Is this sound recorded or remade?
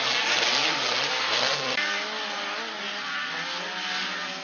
recorded